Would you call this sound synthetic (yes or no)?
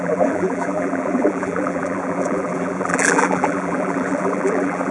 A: yes